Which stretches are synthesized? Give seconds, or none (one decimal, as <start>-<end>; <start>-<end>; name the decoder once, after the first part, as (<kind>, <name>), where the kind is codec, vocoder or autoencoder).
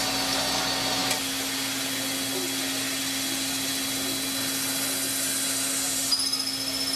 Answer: none